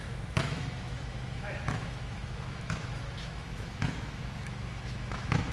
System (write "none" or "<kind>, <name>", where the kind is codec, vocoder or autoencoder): autoencoder, DAC-VAE